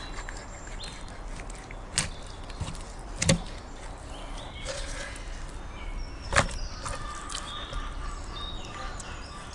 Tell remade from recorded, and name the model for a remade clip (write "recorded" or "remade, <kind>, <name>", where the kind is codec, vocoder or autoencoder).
recorded